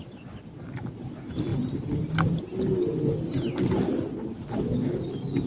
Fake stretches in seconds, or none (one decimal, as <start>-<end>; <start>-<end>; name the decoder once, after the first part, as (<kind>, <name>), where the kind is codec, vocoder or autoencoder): none

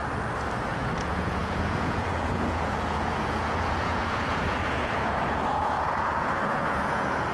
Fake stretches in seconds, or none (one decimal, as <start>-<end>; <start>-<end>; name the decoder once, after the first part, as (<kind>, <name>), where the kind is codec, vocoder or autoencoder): 0.7-7.3 (vocoder, Vocos)

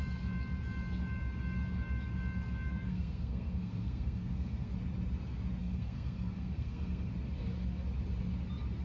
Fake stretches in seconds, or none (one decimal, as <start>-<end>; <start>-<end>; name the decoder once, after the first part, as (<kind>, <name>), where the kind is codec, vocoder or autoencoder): 2.7-4.7 (codec, SNAC); 5.6-7.1